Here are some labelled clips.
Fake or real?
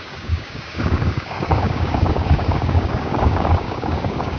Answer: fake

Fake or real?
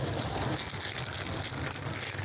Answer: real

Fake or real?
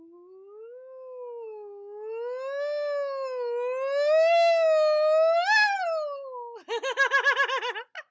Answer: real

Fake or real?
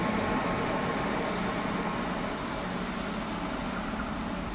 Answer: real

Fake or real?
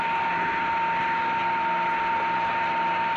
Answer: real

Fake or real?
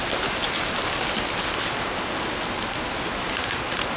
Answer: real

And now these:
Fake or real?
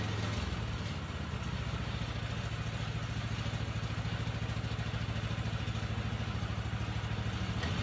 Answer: real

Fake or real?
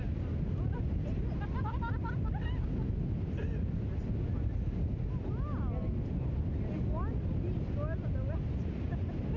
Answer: real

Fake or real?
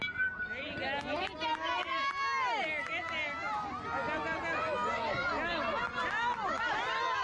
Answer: real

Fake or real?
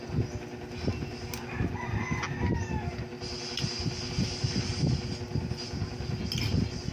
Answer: real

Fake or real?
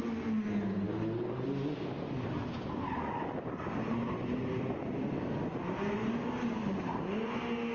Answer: real